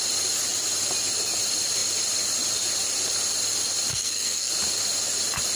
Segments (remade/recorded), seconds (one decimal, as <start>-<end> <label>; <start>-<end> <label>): 0.0-3.9 recorded; 3.9-4.5 remade; 4.5-5.6 recorded